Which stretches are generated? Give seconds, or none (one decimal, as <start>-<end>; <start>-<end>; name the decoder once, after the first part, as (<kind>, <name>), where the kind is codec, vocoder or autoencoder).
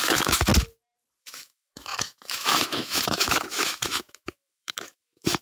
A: 0.0-0.5 (autoencoder, DAC-VAE); 1.2-5.4